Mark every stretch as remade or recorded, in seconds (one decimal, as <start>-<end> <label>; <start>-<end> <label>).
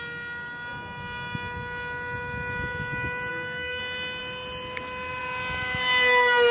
0.0-3.3 recorded; 3.3-3.8 remade; 3.8-6.5 recorded